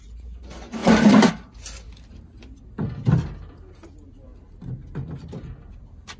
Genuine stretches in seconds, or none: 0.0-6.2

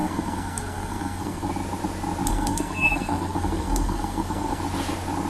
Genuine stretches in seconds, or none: 1.5-2.3; 4.6-5.3

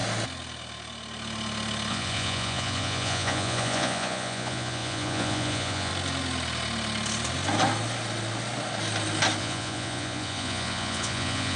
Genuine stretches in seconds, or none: 0.0-1.9; 5.9-9.4

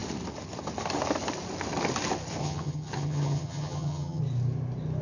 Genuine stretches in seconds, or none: 0.0-2.4; 4.2-5.0

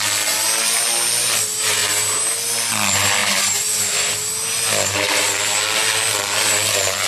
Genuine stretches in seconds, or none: 0.0-7.1

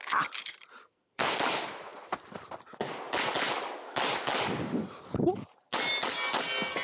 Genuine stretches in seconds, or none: 0.0-0.8; 1.3-6.8